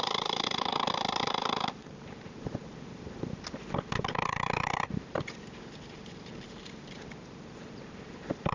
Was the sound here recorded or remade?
remade